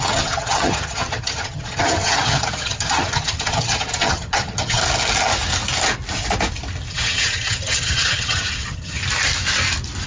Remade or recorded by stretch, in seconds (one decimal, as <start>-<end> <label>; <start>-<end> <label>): 0.0-4.8 remade; 4.8-6.9 recorded; 6.9-9.0 remade; 9.0-10.1 recorded